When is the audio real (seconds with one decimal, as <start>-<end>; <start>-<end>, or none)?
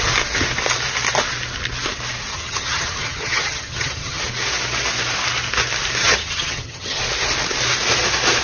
0.0-2.3; 4.2-6.0; 7.0-8.4